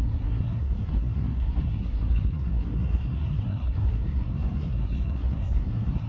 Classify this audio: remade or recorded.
remade